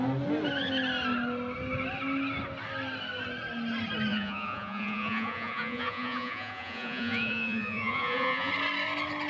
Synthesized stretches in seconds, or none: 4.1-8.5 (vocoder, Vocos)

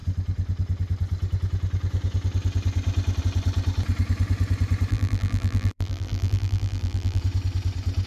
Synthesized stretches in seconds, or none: 4.9-7.2 (vocoder, BigVGAN v2)

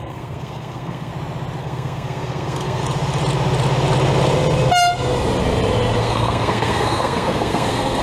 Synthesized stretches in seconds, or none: 0.0-1.1 (codec, SNAC); 1.6-2.8; 6.0-8.0

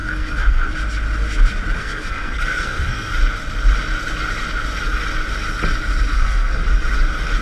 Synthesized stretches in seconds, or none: 0.0-0.7 (codec, SNAC); 1.8-3.1; 6.1-6.6

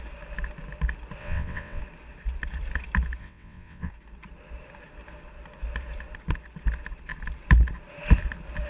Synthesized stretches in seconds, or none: 1.2-1.8 (vocoder, WaveNeXt); 3.2-3.9

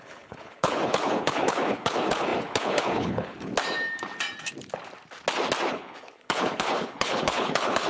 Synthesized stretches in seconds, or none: 0.0-3.5 (codec, HILCodec); 5.7-7.9

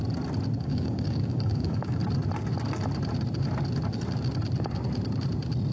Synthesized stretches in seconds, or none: 0.6-2.0 (codec, DAC)